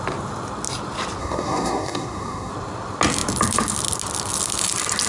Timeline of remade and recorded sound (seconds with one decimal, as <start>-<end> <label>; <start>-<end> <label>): 0.0-1.2 recorded; 1.2-2.5 remade; 2.5-5.1 recorded